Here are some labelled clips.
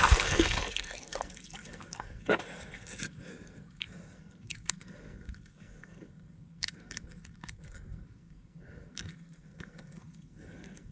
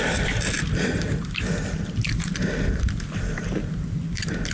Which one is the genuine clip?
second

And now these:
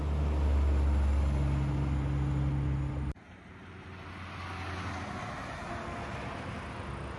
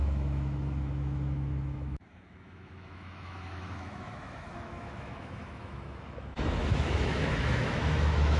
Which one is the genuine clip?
first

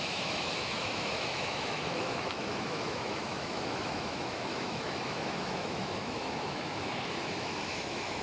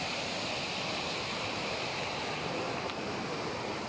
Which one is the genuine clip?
second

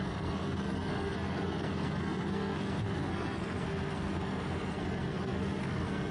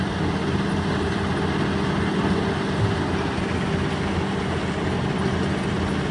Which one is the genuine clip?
second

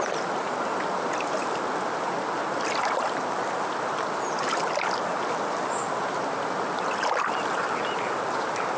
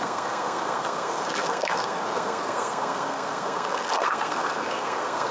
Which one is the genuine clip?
first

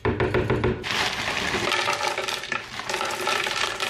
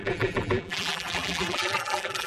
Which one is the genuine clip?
first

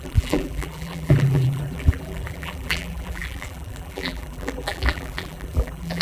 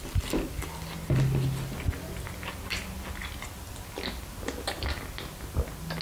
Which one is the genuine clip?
second